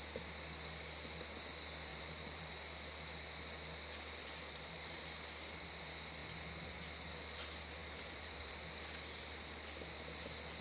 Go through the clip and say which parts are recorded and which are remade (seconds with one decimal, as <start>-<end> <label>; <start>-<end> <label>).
0.0-1.9 recorded; 1.9-2.5 remade; 2.5-4.2 recorded; 4.2-5.0 remade; 5.0-7.8 recorded; 7.8-8.5 remade; 8.5-10.6 recorded